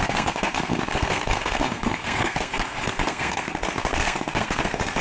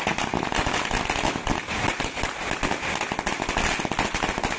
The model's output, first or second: first